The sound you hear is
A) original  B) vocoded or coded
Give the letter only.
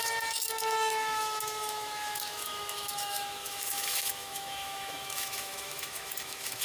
B